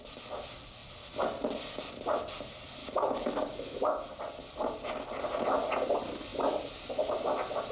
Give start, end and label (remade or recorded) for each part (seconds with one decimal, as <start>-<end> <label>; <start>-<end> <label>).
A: 0.0-2.8 recorded; 2.8-4.1 remade; 4.1-7.7 recorded